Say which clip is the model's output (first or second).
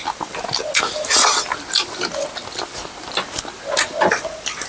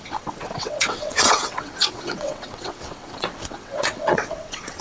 second